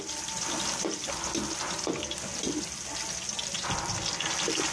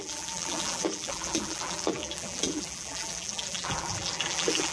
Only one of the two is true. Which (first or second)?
first